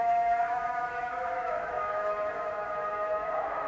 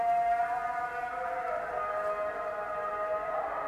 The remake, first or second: first